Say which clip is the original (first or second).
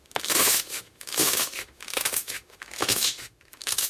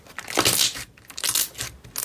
second